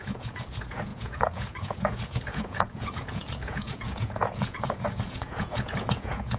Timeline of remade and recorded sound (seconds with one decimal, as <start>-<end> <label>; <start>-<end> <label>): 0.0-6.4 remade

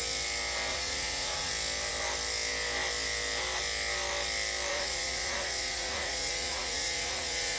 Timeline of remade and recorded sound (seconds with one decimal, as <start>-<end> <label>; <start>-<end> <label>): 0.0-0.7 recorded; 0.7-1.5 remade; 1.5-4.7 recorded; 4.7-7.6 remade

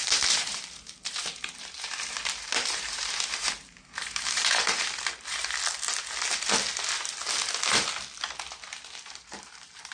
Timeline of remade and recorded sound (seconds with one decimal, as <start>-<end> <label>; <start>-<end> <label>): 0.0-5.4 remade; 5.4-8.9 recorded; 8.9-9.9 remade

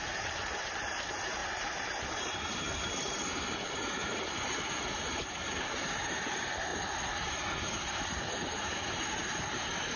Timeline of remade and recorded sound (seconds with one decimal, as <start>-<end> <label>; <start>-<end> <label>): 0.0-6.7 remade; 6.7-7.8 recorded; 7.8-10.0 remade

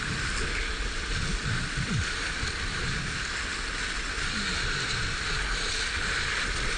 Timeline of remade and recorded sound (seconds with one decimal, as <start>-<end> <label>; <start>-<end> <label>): 0.0-6.8 recorded